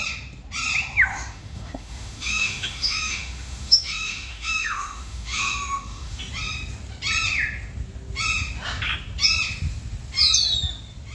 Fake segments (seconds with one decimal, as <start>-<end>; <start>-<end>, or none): 1.1-6.2